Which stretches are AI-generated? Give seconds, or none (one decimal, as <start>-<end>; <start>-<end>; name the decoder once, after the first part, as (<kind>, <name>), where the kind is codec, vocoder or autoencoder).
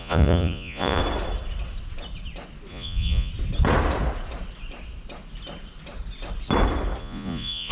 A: 0.0-1.0 (vocoder, Vocos); 2.7-3.3; 7.0-7.7